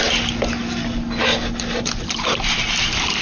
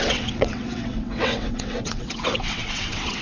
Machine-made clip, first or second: second